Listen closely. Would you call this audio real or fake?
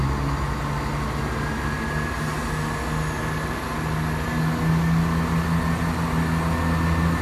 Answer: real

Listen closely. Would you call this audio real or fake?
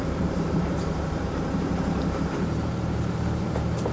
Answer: fake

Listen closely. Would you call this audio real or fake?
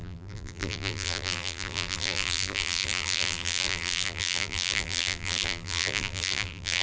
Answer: fake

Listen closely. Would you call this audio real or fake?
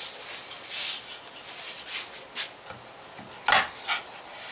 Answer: real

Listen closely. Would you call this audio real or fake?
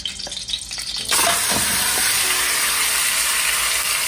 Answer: real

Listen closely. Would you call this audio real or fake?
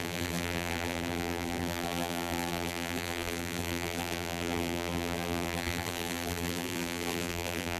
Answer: fake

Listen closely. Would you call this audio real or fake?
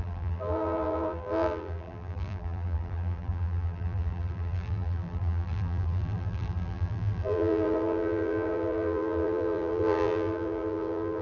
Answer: fake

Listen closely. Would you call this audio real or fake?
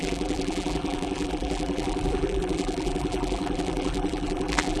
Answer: fake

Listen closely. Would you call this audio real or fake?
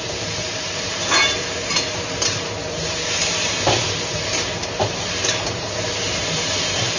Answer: fake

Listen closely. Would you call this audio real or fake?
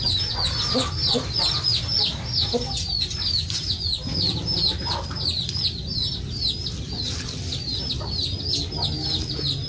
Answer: real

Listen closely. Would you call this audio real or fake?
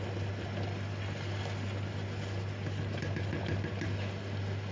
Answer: real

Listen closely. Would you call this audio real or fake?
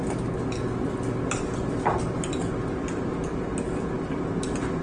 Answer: real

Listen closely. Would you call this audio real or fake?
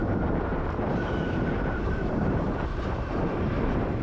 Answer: fake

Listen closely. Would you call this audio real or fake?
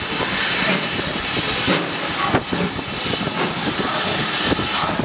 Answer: real